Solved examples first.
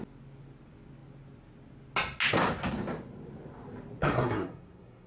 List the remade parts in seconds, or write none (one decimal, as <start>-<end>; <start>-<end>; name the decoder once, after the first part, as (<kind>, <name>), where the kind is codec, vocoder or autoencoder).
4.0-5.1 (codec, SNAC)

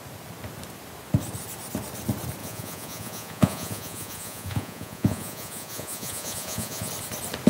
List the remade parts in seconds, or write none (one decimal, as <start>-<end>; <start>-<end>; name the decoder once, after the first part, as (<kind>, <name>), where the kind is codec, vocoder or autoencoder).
2.4-6.9 (vocoder, Vocos)

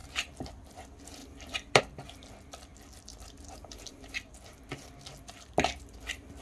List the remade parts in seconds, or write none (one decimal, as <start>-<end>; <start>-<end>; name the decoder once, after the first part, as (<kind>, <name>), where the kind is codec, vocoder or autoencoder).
none

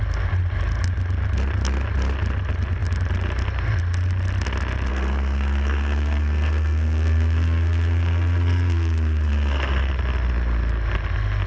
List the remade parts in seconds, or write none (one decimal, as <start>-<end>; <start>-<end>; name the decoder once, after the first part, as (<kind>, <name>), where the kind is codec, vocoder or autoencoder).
4.9-9.9 (codec, SNAC)

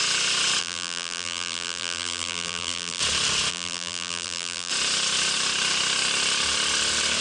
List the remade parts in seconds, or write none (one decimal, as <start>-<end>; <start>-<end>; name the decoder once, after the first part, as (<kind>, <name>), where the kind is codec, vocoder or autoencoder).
0.6-3.0 (vocoder, BigVGAN v2); 3.5-4.7

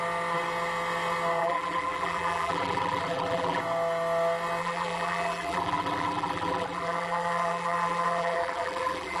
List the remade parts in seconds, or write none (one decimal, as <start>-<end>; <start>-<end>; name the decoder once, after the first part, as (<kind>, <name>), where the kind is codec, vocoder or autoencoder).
1.4-3.6 (vocoder, BigVGAN v2); 4.6-9.2

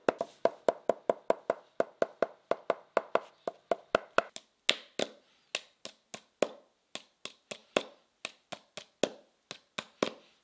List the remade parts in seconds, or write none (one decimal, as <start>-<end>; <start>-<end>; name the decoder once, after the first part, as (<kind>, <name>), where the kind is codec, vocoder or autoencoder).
none